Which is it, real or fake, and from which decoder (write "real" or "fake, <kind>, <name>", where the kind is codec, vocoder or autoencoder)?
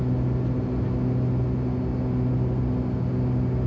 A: real